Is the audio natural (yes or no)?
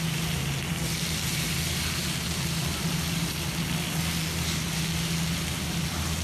yes